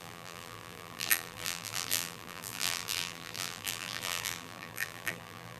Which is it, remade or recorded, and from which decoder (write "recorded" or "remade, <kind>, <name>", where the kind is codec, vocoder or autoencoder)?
remade, vocoder, BigVGAN v2